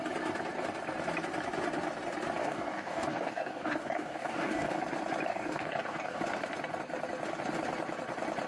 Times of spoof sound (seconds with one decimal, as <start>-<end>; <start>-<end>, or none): 2.4-4.8; 5.3-6.2